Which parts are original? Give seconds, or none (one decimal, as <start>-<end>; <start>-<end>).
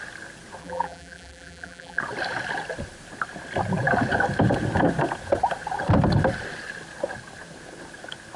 0.0-0.6; 2.0-8.4